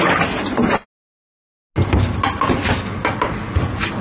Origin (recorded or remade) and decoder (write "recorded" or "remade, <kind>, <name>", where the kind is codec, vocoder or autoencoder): recorded